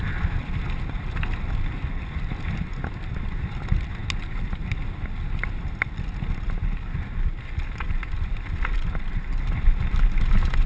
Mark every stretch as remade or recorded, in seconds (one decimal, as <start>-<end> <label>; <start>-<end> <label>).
0.0-10.7 recorded